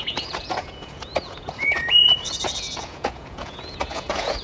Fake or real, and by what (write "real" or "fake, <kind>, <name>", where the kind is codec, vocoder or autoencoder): fake, vocoder, Vocos